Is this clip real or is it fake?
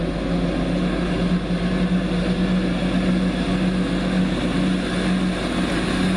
real